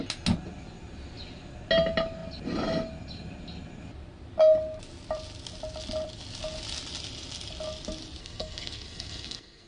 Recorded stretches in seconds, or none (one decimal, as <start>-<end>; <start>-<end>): 0.0-8.2